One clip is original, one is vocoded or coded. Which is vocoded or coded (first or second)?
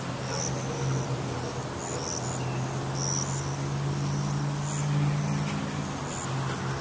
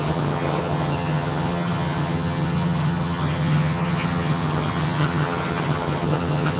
second